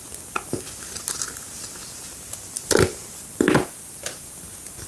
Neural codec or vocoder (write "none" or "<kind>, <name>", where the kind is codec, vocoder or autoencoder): none